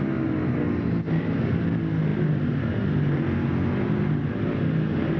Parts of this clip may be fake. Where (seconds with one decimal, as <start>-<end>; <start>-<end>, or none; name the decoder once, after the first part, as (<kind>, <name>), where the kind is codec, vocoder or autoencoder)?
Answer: none